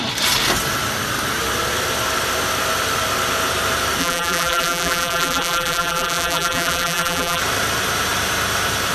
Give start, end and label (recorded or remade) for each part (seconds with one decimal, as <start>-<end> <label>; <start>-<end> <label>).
0.0-4.0 recorded; 4.0-7.4 remade; 7.4-8.9 recorded